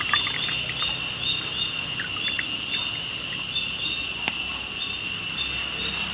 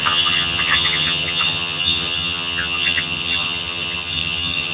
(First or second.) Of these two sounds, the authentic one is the first